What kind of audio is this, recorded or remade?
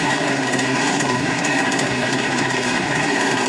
remade